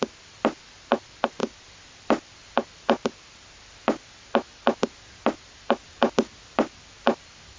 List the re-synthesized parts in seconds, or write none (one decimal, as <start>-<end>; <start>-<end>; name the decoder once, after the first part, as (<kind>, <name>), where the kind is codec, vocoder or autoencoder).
none